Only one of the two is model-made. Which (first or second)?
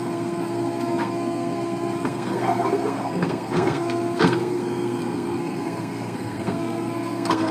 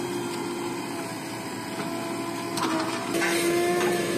first